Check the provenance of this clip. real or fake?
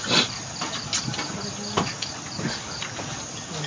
real